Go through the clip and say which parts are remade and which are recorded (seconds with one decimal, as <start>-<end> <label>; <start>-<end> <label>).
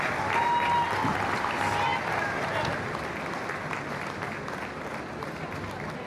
0.0-6.1 recorded